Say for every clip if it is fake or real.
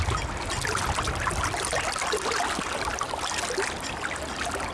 real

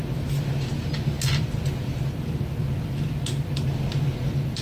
real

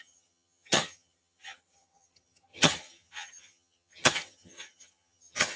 fake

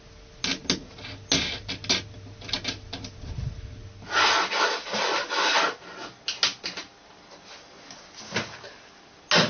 real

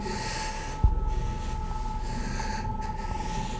real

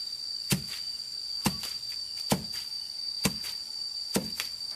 real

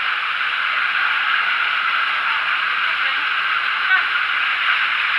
real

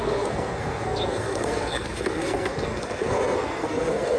fake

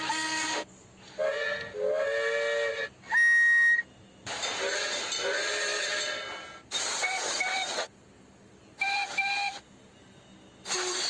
real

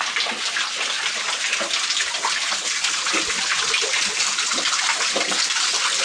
real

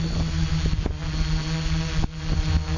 real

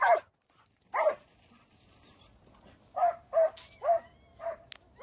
real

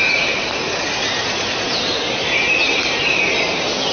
fake